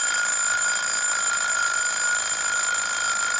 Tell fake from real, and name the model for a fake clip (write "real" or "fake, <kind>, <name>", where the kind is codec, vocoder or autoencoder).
fake, vocoder, BigVGAN v2